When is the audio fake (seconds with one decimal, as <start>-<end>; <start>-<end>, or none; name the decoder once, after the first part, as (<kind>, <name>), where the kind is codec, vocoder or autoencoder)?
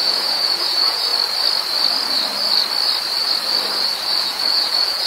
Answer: 0.0-1.1 (vocoder, Vocos); 4.2-5.1